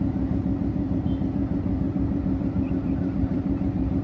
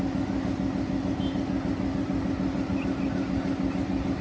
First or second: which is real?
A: second